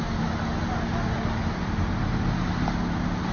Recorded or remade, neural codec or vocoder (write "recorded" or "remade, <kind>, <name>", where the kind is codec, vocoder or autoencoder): recorded